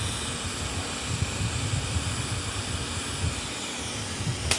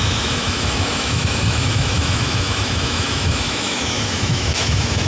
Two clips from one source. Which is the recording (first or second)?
first